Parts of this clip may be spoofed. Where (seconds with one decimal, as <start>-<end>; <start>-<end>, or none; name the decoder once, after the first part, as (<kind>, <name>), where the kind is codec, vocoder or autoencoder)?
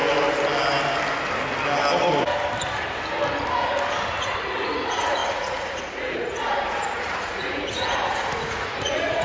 4.2-9.2 (vocoder, Vocos)